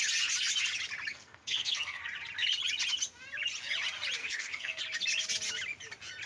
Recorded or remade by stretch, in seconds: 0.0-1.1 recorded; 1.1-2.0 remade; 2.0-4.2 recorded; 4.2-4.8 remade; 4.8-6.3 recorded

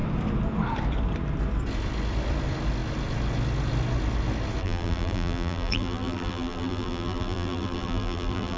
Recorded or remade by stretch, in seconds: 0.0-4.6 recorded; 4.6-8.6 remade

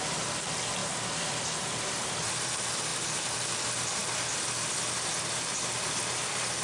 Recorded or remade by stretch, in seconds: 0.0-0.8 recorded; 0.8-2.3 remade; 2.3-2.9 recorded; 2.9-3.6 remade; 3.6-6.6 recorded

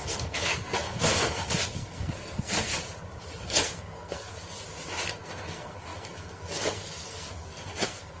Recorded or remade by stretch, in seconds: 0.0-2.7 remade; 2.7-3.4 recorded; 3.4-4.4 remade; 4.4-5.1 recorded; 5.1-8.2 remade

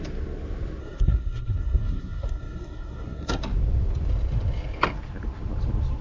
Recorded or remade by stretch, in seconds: 0.0-0.8 recorded; 0.8-3.4 remade; 3.4-6.0 recorded